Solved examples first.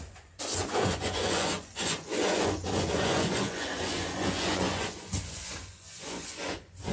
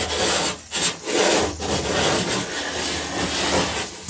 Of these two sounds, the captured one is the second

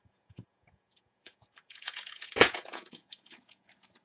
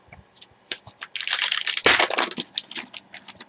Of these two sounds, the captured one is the second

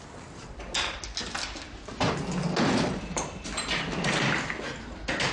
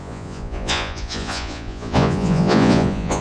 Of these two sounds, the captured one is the first